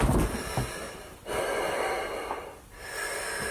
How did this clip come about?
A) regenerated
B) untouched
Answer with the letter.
B